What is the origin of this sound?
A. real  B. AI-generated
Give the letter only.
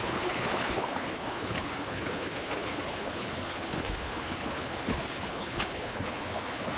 B